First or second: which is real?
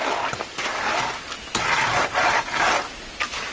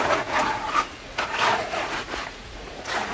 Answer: first